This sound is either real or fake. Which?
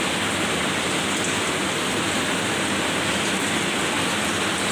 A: fake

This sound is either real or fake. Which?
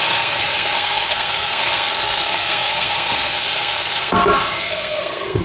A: fake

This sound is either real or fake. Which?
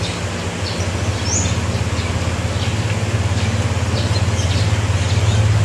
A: real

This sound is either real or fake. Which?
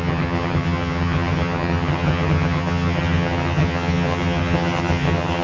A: fake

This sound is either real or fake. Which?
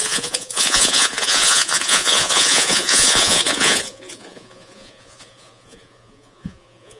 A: fake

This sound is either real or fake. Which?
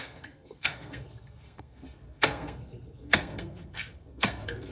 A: fake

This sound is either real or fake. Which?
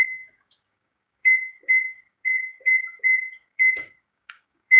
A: fake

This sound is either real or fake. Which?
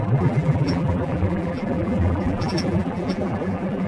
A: fake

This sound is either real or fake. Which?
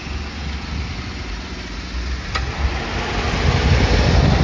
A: real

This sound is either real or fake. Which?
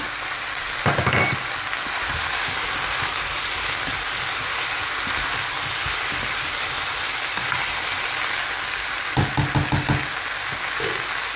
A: real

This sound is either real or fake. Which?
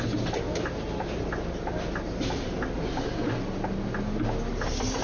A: real